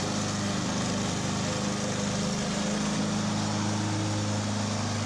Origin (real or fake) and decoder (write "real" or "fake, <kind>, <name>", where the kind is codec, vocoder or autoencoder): real